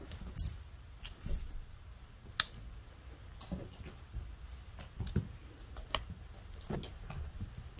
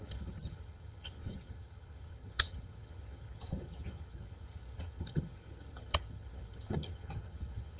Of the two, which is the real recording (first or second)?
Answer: first